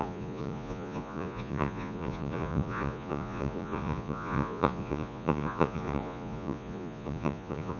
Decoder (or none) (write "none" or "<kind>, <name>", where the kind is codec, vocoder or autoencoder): vocoder, Vocos